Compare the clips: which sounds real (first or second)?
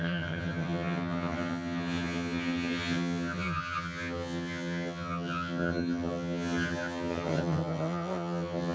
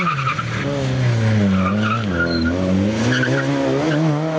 second